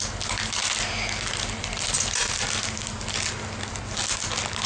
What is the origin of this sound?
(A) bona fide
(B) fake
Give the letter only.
A